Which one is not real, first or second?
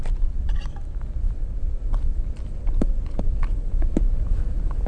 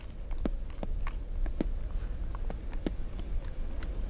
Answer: first